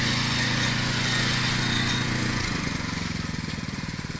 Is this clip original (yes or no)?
no